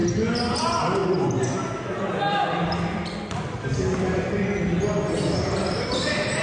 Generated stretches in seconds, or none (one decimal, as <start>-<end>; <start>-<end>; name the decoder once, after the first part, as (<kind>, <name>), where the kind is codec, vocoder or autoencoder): none